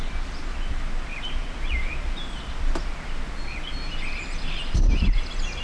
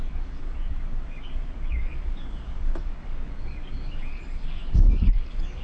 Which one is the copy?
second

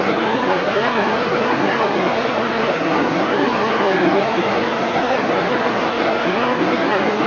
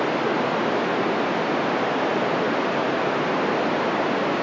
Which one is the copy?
first